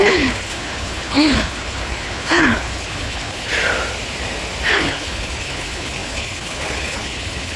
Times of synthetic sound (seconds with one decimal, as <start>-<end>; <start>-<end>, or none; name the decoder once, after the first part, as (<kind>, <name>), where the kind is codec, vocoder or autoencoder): 0.0-3.5 (codec, HILCodec); 4.7-7.6